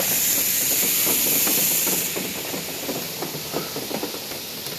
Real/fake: real